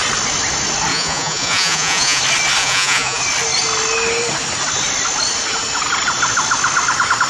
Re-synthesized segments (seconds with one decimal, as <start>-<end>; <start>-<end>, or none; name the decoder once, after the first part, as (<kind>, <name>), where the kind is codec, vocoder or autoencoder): 0.9-2.2 (vocoder, Vocos); 2.6-3.2